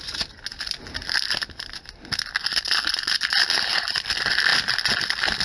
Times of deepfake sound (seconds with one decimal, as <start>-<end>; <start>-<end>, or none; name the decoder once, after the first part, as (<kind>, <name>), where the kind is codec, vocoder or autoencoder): none